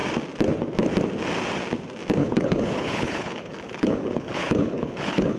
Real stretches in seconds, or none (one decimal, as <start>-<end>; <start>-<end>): 0.0-2.2